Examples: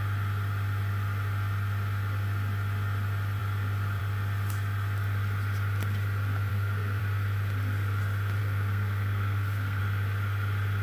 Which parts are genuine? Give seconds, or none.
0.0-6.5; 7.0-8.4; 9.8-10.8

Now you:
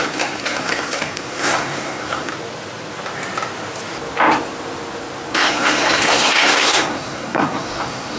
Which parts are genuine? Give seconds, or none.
2.3-5.3

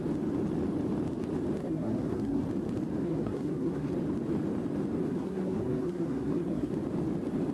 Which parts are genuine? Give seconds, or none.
0.0-1.6; 2.4-3.0; 3.9-5.0; 6.7-7.5

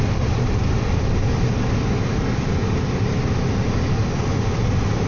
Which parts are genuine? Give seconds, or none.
0.0-5.1

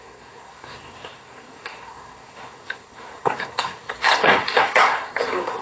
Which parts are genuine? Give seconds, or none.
none